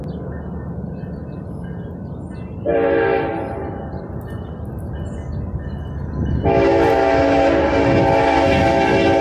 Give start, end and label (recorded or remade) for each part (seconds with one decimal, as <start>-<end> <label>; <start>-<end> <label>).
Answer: 0.0-3.3 recorded; 3.3-3.9 remade; 3.9-9.2 recorded